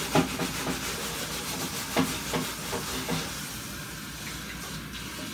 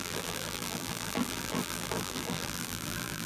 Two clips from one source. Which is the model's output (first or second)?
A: second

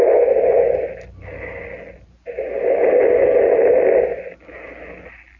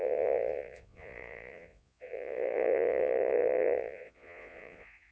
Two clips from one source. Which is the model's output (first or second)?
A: second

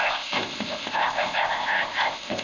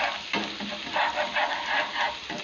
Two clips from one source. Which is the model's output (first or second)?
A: first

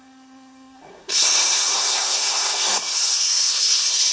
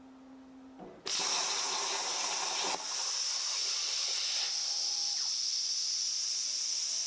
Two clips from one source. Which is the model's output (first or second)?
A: first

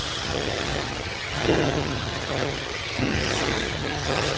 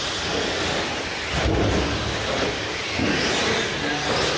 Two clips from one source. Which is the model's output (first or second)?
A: first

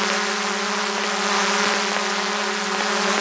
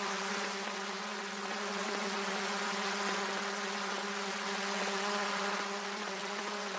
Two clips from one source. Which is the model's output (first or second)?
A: second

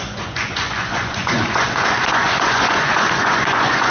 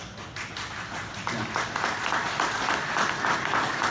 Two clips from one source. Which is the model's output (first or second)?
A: first